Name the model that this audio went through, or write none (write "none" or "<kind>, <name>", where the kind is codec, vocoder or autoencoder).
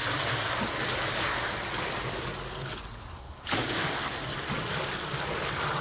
none